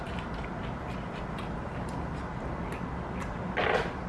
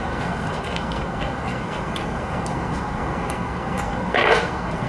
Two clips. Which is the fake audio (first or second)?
second